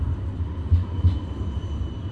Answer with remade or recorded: recorded